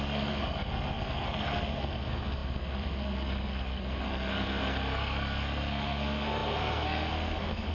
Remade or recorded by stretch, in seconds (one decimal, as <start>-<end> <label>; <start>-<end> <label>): 0.0-7.7 remade